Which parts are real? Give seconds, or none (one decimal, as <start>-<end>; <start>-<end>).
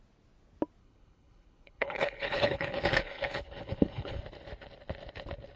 0.0-0.8; 4.2-5.6